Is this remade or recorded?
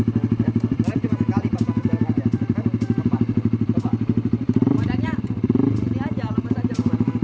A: remade